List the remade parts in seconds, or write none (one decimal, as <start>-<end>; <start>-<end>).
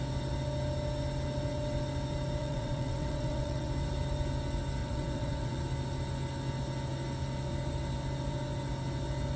2.4-3.7; 4.8-5.6